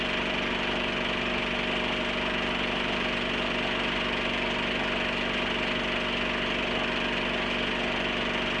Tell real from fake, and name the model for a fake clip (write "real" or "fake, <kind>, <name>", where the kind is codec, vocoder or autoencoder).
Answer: real